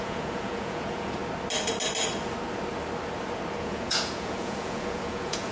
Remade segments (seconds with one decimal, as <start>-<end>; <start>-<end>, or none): 0.0-1.2; 3.6-5.5